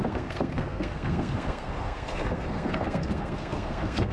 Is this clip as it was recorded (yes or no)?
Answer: no